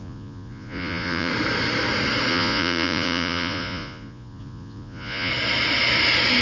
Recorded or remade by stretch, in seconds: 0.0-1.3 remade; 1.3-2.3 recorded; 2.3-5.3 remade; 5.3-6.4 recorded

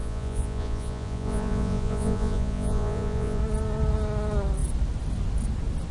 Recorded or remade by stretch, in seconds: 0.0-3.4 remade; 3.4-5.9 recorded

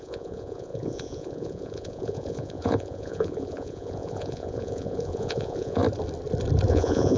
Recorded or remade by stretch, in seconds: 0.0-5.8 remade; 5.8-6.7 recorded; 6.7-7.2 remade

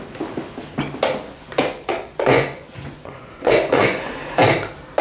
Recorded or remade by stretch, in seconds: 0.0-1.1 recorded; 1.1-4.1 remade; 4.1-5.0 recorded

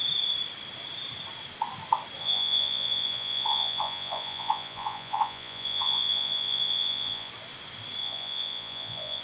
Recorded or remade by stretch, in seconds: 0.0-2.2 recorded; 2.2-7.3 remade; 7.3-8.0 recorded; 8.0-9.2 remade